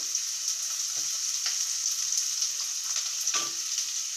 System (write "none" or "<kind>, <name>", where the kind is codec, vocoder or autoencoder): none